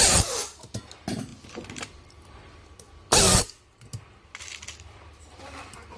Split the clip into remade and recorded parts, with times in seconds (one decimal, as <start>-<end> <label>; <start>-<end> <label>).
0.0-6.0 recorded